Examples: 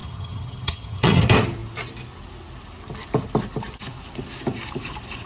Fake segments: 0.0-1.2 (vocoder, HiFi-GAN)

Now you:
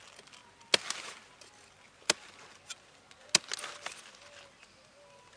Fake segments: none

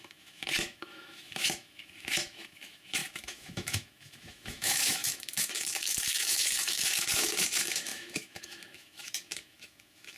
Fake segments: 0.0-10.2 (autoencoder, DAC-VAE)

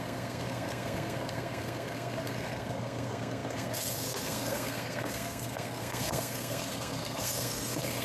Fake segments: 0.0-8.0 (codec, SNAC)

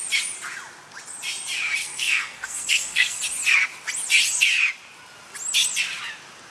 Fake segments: 1.8-3.2 (codec, SNAC)

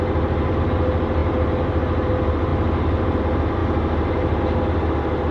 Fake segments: none